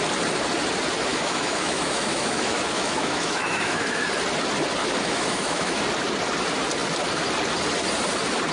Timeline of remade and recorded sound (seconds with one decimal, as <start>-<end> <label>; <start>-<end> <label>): 0.0-1.1 recorded; 1.1-4.0 remade; 4.0-4.8 recorded; 4.8-5.8 remade; 5.8-8.5 recorded